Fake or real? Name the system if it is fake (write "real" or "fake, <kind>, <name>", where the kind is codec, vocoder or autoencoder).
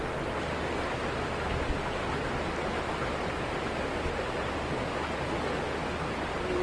real